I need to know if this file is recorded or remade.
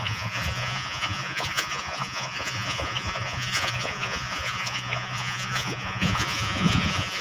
remade